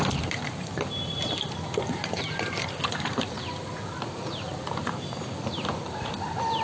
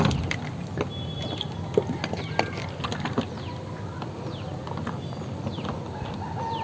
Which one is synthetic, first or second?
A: first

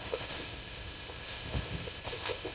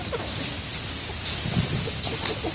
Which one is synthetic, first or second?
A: first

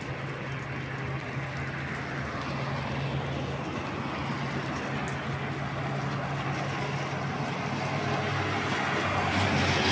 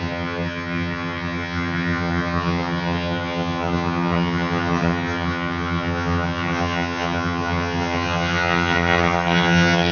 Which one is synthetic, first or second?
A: second